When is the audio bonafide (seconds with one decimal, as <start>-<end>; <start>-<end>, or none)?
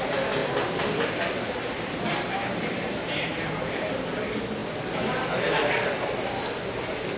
0.0-0.4; 3.9-7.2